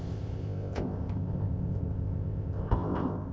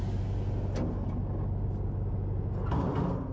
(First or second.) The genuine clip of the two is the second